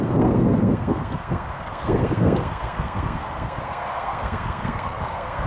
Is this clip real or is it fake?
fake